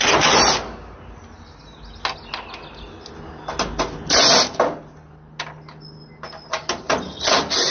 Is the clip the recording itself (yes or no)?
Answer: yes